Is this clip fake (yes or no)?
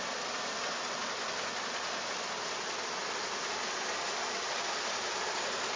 no